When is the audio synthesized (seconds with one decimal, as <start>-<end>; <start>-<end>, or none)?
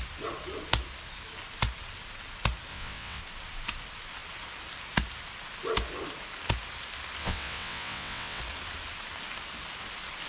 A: 2.7-3.2; 7.2-8.4